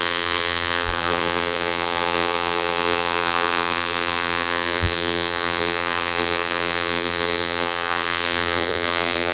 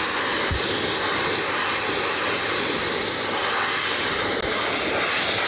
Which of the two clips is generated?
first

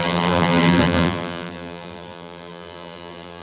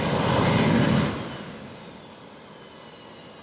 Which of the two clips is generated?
first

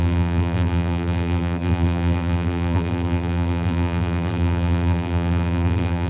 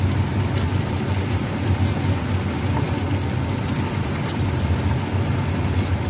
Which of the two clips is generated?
first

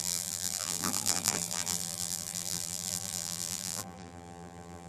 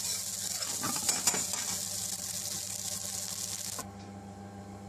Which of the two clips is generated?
first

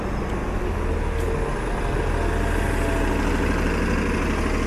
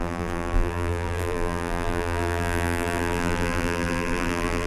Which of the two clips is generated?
second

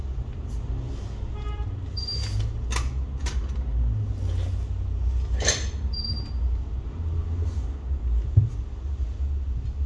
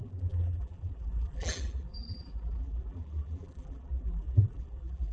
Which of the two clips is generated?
second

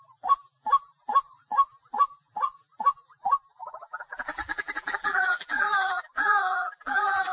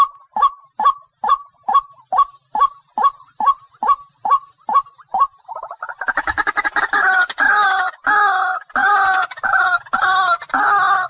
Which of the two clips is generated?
first